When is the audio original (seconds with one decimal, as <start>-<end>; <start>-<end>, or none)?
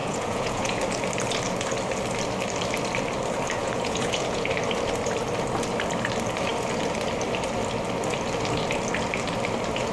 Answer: 0.8-3.6; 4.5-9.9